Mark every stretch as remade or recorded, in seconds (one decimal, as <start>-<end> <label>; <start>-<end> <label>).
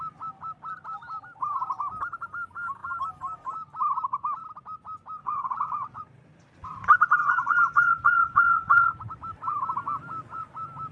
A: 0.0-5.2 recorded; 5.2-6.0 remade; 6.0-7.2 recorded; 7.2-8.9 remade; 8.9-10.9 recorded